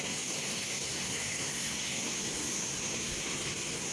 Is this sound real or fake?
fake